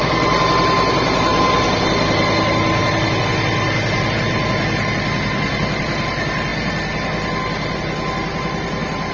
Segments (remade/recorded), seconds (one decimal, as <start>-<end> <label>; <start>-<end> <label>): 0.0-9.1 recorded